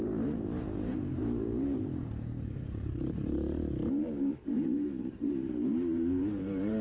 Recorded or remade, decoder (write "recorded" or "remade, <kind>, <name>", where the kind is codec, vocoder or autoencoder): remade, vocoder, BigVGAN v2